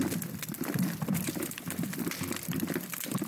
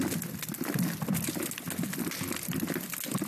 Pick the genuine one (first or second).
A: second